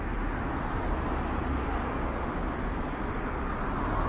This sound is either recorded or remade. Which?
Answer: recorded